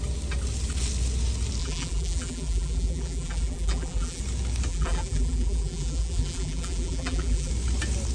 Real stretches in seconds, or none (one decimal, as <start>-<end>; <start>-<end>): 0.0-1.6; 4.2-4.7; 7.5-8.1